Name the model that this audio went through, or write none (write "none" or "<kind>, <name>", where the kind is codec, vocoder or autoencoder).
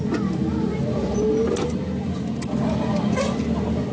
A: none